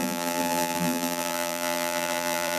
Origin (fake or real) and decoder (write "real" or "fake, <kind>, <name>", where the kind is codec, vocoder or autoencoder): fake, vocoder, BigVGAN v2